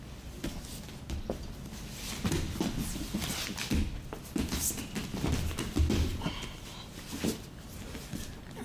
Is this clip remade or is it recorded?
recorded